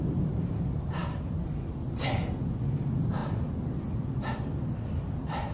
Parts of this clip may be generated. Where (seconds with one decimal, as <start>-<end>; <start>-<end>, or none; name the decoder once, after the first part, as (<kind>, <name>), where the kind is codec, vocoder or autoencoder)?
0.0-3.2 (vocoder, BigVGAN v2); 4.5-5.5